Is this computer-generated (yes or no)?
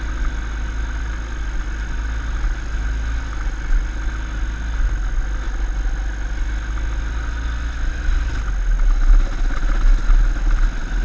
no